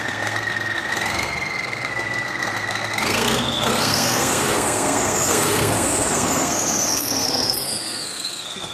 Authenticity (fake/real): fake